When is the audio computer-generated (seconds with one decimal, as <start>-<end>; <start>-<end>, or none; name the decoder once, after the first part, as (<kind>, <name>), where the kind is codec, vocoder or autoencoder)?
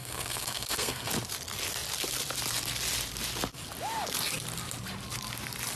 0.0-1.1 (codec, SNAC)